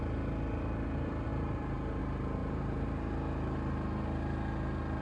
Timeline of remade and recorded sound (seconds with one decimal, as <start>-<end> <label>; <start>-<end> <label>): 0.0-1.3 recorded; 1.3-2.0 remade; 2.0-2.4 recorded; 2.4-3.1 remade; 3.1-5.0 recorded